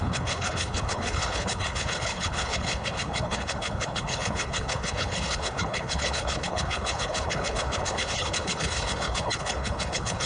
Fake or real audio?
fake